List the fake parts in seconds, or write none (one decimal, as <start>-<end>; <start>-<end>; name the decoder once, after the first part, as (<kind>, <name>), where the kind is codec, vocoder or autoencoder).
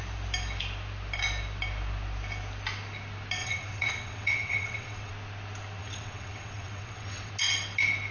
3.4-5.1 (vocoder, WaveNeXt); 5.8-7.3